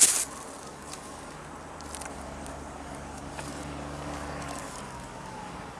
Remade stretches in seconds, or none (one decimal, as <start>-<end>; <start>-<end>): 0.7-1.4; 2.1-5.8